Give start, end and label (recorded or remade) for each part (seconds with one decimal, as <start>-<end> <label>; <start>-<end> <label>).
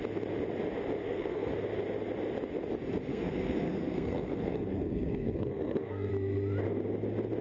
0.0-1.0 recorded; 1.0-1.5 remade; 1.5-3.1 recorded; 3.1-6.1 remade; 6.1-7.4 recorded